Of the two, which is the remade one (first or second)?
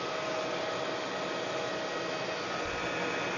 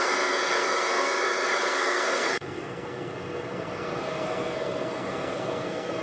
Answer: second